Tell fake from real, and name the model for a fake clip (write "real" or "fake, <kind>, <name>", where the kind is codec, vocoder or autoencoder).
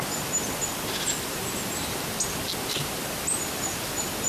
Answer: real